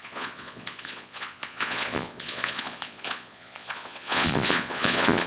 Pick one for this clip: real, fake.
fake